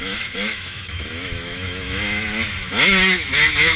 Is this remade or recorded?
remade